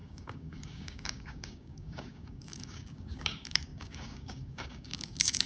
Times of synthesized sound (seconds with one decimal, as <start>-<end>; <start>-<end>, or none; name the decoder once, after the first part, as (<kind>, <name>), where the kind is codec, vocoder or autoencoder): 0.0-5.5 (codec, DAC)